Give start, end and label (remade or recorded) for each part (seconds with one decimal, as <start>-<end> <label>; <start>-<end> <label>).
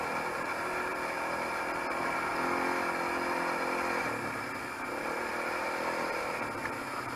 0.0-7.2 recorded